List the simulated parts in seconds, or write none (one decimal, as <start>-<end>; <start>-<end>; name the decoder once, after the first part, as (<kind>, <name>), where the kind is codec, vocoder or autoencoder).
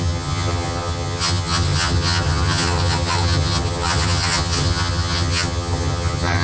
0.0-6.4 (vocoder, HiFi-GAN)